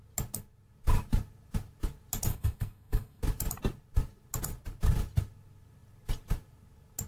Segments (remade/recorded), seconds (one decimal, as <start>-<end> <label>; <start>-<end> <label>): 0.0-2.3 recorded; 2.3-3.2 remade; 3.2-7.1 recorded